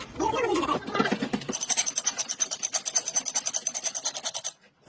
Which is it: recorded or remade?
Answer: recorded